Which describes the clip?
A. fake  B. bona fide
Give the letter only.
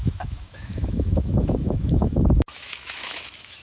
A